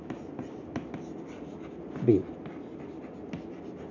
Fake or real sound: real